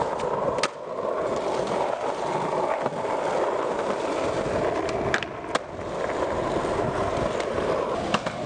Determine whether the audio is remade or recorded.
recorded